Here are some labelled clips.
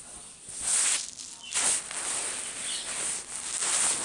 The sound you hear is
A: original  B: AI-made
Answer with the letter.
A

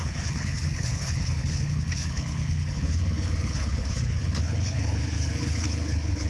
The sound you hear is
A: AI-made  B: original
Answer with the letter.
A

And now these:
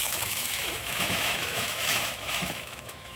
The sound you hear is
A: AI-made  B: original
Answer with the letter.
A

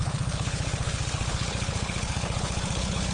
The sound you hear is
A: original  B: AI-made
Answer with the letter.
B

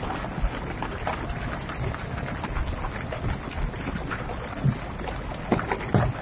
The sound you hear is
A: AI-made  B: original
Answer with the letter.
B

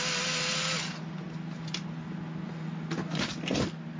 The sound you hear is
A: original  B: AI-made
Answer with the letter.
A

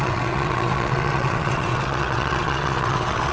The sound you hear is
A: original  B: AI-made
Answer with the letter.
B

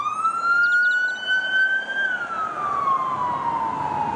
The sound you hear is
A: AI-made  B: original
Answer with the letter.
B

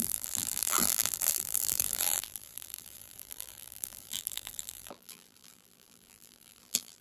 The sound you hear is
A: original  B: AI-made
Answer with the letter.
B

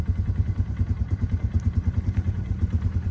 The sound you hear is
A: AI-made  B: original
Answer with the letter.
A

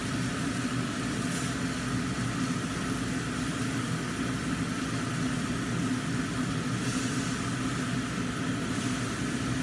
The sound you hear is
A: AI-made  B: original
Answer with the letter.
B